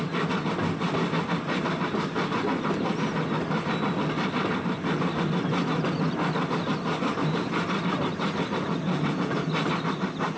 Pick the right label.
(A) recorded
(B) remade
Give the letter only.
A